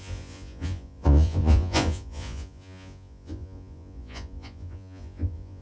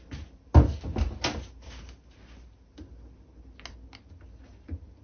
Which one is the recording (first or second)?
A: second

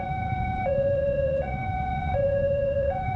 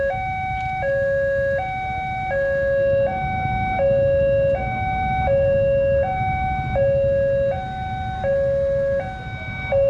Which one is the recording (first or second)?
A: second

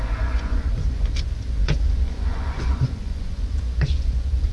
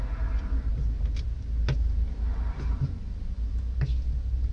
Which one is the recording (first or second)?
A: second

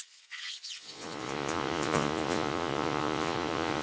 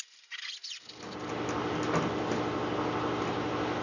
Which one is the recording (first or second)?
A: second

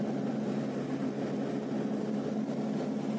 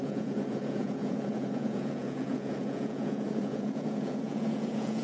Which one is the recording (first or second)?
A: first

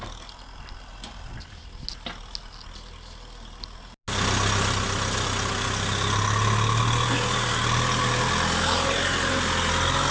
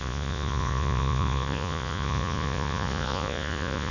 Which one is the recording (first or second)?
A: first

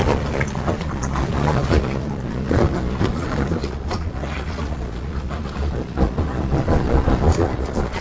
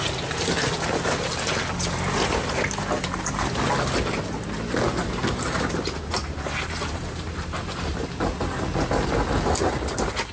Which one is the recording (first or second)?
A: second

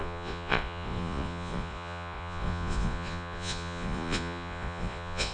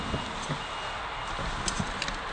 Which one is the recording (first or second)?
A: second